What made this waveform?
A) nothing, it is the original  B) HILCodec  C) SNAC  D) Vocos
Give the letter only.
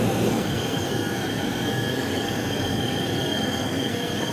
C